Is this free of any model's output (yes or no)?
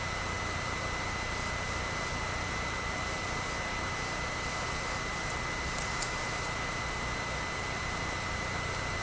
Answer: yes